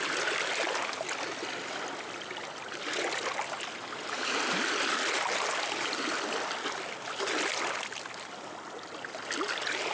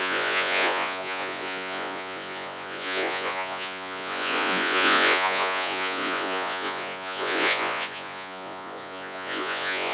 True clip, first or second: first